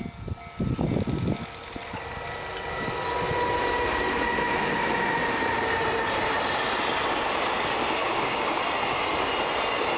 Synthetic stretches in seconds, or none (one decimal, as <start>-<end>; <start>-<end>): 8.0-8.6